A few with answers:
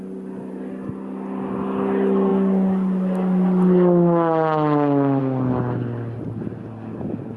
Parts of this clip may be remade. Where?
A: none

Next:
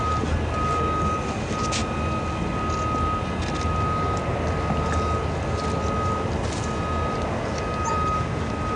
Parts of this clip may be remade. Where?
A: none

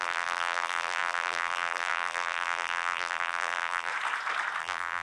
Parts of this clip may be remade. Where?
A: 0.0-3.9 (vocoder, BigVGAN v2); 4.6-5.0

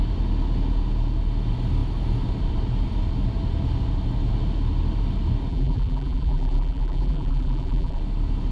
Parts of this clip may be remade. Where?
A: 5.5-8.0 (vocoder, BigVGAN v2)